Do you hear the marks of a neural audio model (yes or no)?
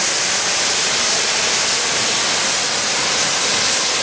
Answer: no